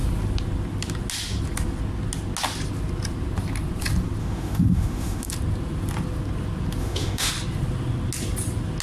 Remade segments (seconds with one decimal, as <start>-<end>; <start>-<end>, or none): 4.2-5.3; 6.8-7.3